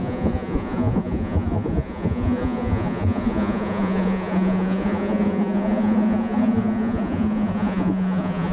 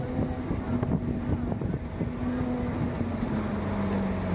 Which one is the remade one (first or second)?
first